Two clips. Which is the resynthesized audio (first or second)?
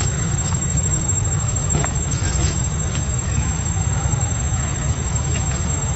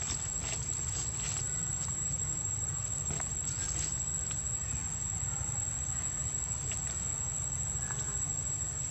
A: first